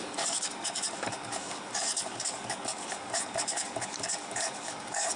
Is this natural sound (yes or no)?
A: no